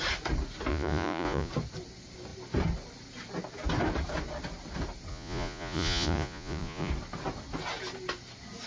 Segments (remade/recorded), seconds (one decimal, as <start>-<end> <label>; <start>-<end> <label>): 0.0-0.7 recorded; 0.7-1.5 remade; 1.5-5.1 recorded; 5.1-6.9 remade; 6.9-8.7 recorded